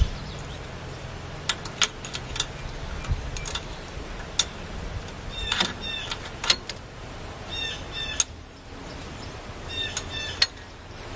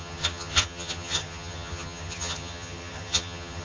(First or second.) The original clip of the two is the first